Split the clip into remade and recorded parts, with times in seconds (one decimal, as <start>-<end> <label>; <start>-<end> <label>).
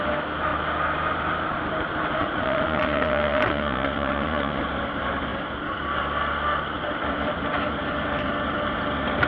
0.0-2.2 recorded; 2.2-4.6 remade; 4.6-9.3 recorded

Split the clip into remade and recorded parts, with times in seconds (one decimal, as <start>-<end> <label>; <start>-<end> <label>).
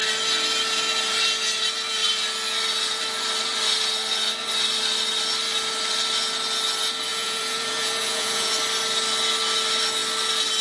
0.0-7.1 recorded; 7.1-8.5 remade; 8.5-10.6 recorded